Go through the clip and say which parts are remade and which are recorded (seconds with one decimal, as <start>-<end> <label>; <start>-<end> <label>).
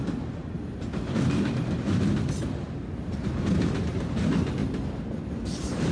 0.0-5.9 recorded